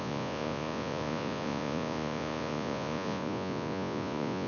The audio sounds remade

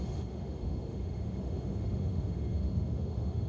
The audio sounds remade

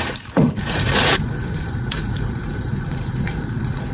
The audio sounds remade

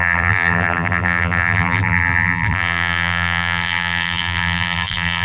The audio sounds remade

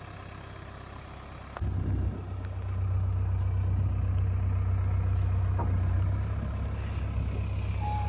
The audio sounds recorded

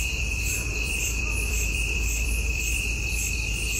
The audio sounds remade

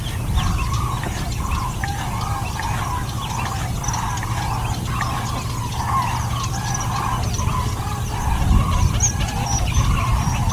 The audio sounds recorded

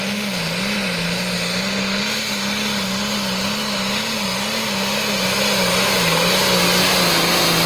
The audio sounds recorded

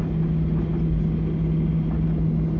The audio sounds recorded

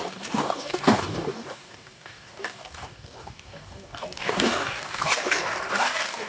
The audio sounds remade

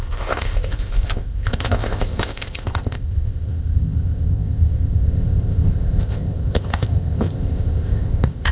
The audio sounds remade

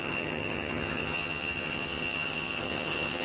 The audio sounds remade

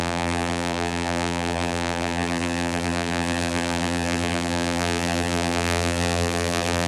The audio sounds remade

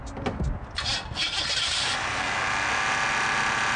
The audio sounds recorded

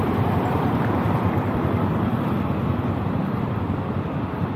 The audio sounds remade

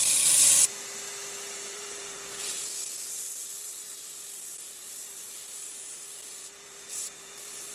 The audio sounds recorded